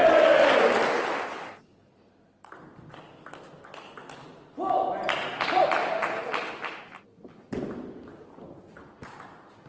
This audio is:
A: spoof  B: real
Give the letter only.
B